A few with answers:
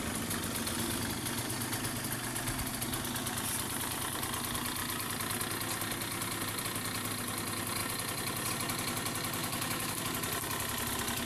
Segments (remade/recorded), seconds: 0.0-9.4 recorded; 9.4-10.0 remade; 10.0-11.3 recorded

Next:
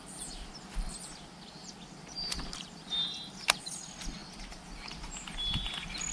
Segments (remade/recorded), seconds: 0.0-1.6 recorded; 1.6-3.7 remade; 3.7-6.1 recorded

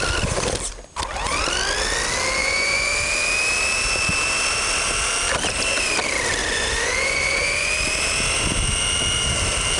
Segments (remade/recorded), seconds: 0.0-2.4 recorded; 2.4-2.9 remade; 2.9-6.4 recorded; 6.4-7.7 remade; 7.7-9.8 recorded

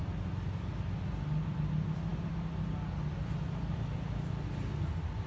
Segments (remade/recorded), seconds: 0.0-5.3 recorded

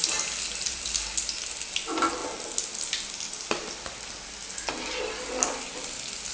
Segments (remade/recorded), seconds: 0.0-6.3 recorded